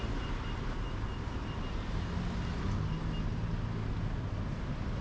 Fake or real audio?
real